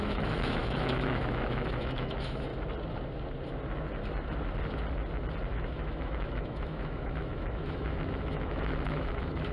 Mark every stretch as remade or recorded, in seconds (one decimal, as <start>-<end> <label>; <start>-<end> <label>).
0.0-2.5 remade; 2.5-5.5 recorded; 5.5-9.5 remade